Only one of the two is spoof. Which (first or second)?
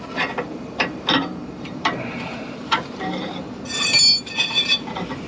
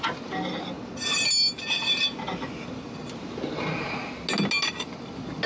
first